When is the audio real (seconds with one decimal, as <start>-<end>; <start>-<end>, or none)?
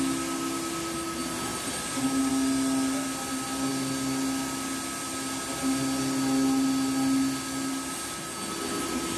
0.0-9.2